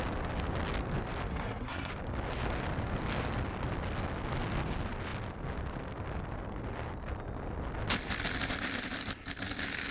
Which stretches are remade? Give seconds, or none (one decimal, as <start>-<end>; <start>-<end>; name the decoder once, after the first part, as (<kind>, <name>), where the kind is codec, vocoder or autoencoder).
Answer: 1.3-1.9 (codec, SNAC)